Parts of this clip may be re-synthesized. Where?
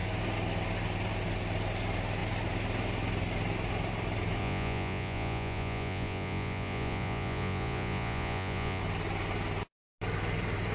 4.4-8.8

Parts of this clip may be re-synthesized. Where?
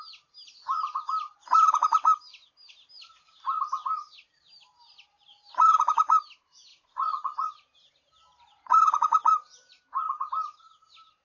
6.7-7.5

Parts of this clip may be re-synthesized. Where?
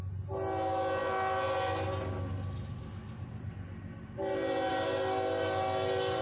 none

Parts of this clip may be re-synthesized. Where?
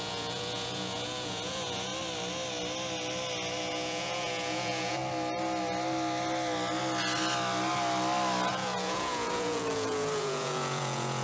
0.0-1.9; 3.6-5.0; 8.5-11.2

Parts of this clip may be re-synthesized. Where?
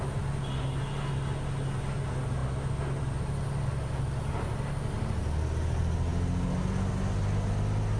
none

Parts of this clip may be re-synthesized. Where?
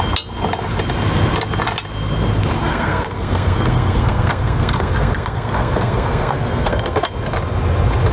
2.7-7.1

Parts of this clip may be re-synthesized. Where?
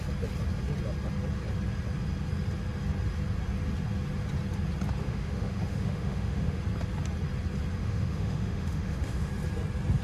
5.0-6.6; 7.8-9.3